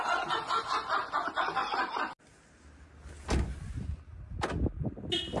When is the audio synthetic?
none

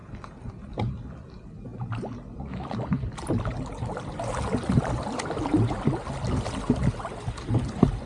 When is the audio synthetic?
none

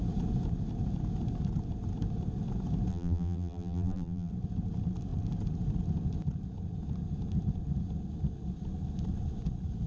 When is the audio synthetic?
2.9-4.3

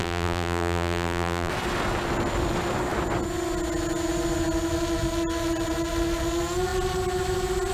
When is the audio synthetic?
0.0-1.5